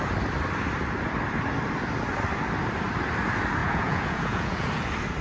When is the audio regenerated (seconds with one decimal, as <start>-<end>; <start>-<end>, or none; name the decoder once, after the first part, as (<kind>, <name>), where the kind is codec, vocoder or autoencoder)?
3.6-4.7 (vocoder, Vocos)